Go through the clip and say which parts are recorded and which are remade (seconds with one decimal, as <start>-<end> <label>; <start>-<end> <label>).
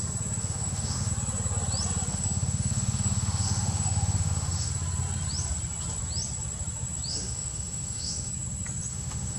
0.0-0.4 recorded; 0.4-1.1 remade; 1.1-2.1 recorded; 2.1-4.7 remade; 4.7-7.1 recorded; 7.1-8.3 remade; 8.3-8.9 recorded; 8.9-9.4 remade